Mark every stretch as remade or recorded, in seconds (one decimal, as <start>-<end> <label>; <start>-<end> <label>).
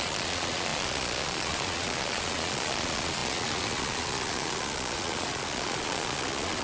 0.0-6.6 remade